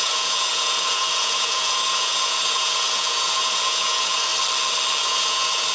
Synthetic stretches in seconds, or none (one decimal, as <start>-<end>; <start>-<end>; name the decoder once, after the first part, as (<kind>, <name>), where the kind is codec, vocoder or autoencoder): 0.0-4.3 (vocoder, Vocos); 5.0-5.7